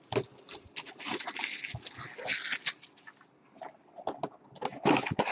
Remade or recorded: recorded